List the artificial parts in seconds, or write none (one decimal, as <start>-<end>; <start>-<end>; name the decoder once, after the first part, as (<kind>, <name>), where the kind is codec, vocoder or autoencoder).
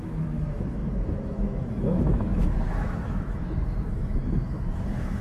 0.0-5.2 (autoencoder, DAC-VAE)